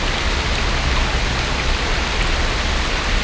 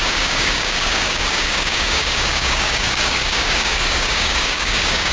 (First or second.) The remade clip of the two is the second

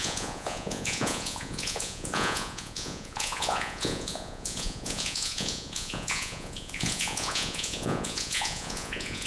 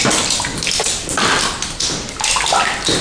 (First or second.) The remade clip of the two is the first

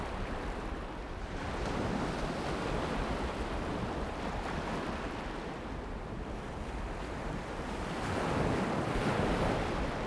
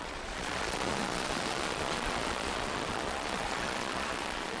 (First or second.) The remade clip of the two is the second